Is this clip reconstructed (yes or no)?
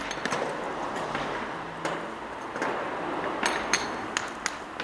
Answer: no